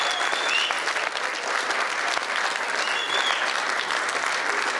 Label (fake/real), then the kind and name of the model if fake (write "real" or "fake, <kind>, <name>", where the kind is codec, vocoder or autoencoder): real